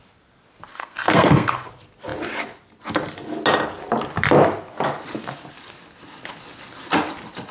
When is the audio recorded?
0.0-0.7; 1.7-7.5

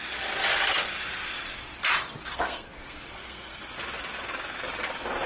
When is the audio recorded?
0.0-2.3; 3.6-5.3

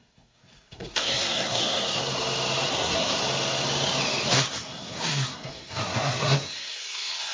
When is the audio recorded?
2.0-2.7; 3.2-4.3

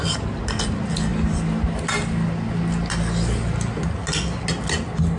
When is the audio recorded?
0.0-5.2

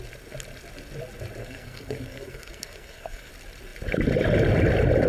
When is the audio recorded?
0.0-1.4; 3.3-5.1

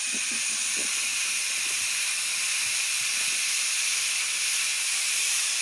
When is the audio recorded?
0.0-1.1; 2.1-4.7

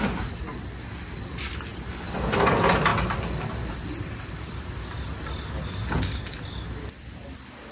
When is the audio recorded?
0.0-7.7